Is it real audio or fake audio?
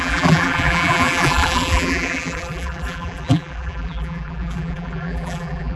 fake